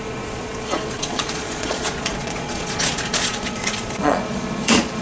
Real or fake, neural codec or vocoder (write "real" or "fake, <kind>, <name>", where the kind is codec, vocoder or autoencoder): fake, vocoder, Vocos